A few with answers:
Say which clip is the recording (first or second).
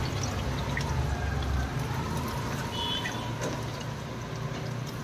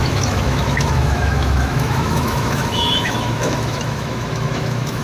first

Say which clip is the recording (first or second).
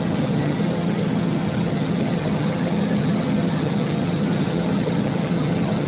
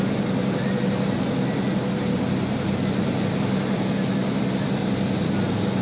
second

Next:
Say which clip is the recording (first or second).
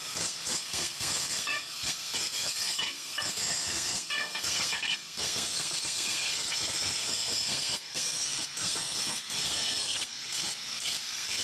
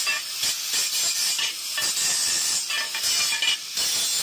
second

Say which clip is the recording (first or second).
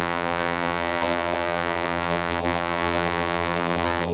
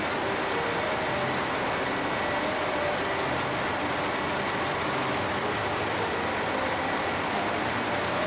second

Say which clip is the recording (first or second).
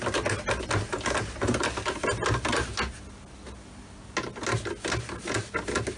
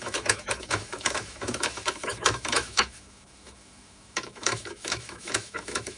first